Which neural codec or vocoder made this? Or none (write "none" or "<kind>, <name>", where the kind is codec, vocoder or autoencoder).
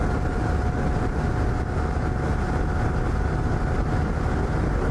none